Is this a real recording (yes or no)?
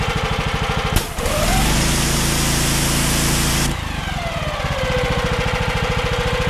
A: yes